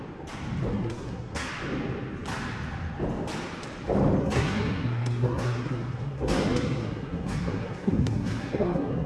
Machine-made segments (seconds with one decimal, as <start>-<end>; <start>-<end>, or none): 0.7-1.5; 4.2-9.1